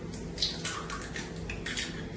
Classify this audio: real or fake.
real